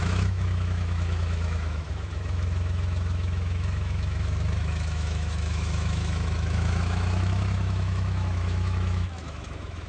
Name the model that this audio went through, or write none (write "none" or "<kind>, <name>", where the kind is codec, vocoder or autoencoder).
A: autoencoder, DAC-VAE